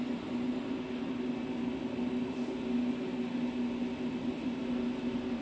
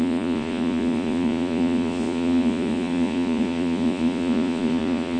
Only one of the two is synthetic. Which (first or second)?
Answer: second